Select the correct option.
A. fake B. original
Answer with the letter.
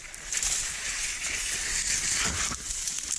B